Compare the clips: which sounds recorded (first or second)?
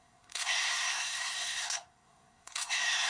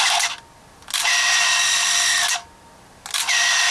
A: second